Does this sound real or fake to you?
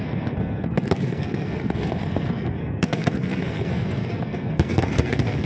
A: fake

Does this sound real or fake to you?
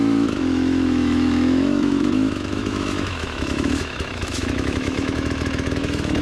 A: fake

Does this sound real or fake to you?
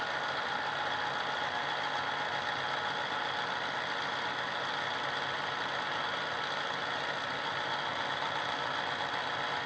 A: real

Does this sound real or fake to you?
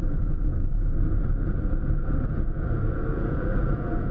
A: fake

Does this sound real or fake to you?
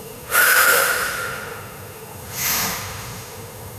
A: fake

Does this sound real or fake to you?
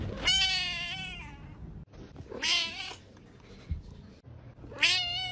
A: real